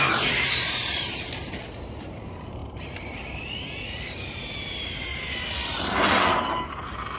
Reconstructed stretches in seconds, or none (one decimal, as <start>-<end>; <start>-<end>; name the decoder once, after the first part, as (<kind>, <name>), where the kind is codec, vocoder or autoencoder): 0.0-5.1 (vocoder, BigVGAN v2); 6.3-7.2